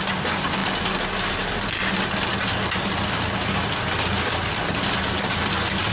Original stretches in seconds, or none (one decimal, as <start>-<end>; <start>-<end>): 0.0-5.9